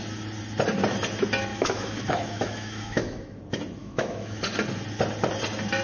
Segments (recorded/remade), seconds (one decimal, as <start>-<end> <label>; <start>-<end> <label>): 0.0-1.5 recorded; 1.5-3.4 remade; 3.4-3.8 recorded; 3.8-4.4 remade; 4.4-5.8 recorded